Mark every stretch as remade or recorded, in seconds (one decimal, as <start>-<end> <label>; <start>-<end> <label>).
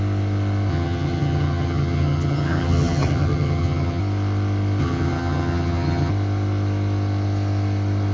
0.0-0.7 recorded; 0.7-4.0 remade; 4.0-4.8 recorded; 4.8-6.1 remade; 6.1-8.1 recorded